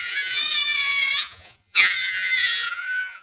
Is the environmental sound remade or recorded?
remade